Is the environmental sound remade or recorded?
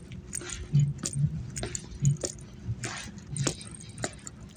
recorded